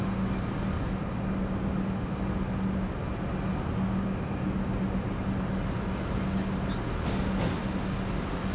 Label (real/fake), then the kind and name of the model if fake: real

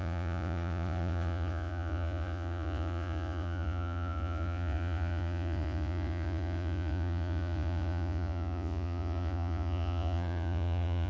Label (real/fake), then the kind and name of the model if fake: fake, vocoder, Vocos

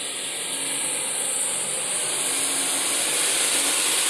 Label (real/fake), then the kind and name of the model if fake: real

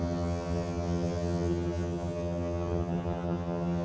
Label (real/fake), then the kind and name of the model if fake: fake, vocoder, HiFi-GAN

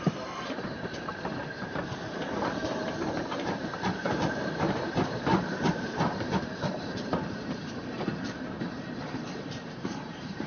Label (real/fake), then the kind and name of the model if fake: fake, vocoder, BigVGAN v2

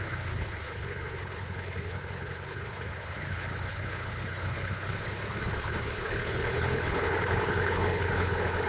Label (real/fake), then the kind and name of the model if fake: fake, codec, HILCodec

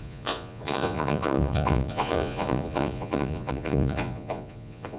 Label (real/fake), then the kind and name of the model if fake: fake, vocoder, Vocos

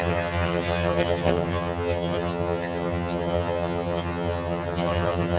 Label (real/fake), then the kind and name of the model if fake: fake, vocoder, HiFi-GAN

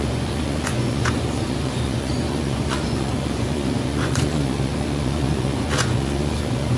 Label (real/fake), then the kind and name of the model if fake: fake, vocoder, Vocos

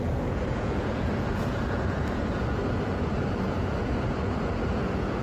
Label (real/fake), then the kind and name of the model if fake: fake, vocoder, Vocos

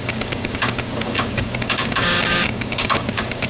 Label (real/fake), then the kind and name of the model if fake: fake, codec, DAC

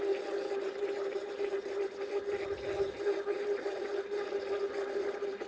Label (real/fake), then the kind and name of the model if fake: real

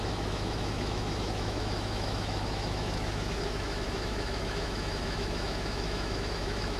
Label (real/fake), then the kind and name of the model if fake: fake, autoencoder, DAC-VAE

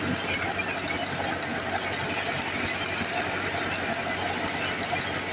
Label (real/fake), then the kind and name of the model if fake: real